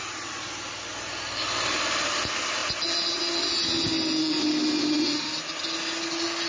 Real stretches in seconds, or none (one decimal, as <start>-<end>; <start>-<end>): 0.0-6.5